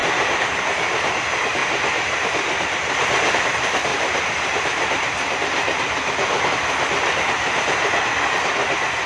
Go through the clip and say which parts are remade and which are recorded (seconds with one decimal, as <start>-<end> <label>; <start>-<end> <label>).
0.0-0.6 remade; 0.6-3.9 recorded; 3.9-6.5 remade; 6.5-9.1 recorded